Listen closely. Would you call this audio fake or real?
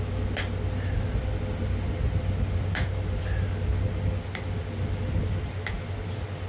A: real